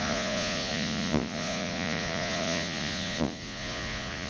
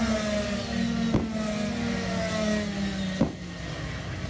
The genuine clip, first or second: second